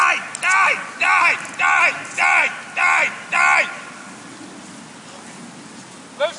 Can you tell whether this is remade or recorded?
recorded